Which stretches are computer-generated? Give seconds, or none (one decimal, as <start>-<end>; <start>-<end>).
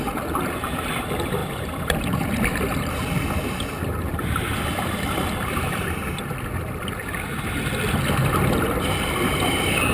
1.4-6.5